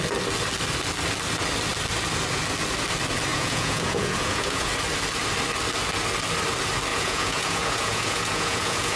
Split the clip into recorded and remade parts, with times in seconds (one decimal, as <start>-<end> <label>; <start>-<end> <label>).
0.0-3.3 recorded; 3.3-4.7 remade; 4.7-6.9 recorded; 6.9-9.0 remade